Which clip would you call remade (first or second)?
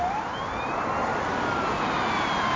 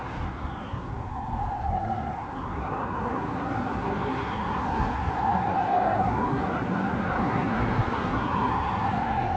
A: second